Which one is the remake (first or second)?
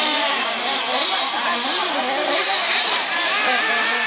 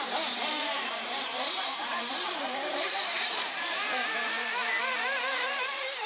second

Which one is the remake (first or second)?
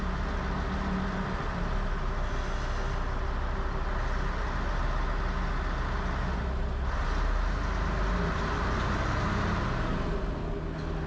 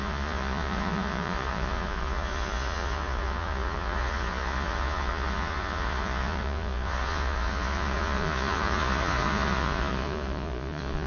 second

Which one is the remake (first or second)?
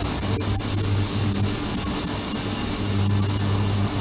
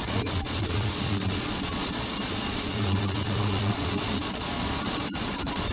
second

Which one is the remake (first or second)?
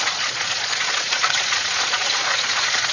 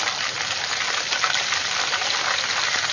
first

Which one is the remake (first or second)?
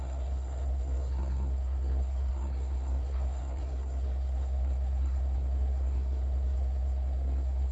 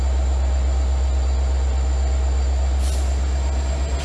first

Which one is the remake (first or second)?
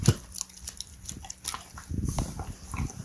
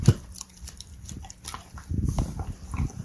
second